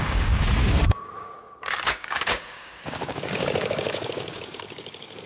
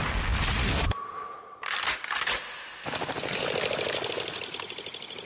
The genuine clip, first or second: second